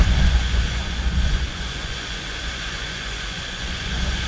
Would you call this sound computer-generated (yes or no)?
yes